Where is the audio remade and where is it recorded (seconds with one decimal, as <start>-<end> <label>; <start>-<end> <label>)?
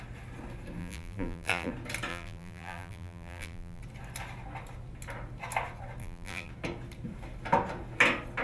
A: 0.0-0.8 recorded; 0.8-1.7 remade; 1.7-2.1 recorded; 2.1-3.8 remade; 3.8-6.0 recorded; 6.0-6.5 remade; 6.5-8.4 recorded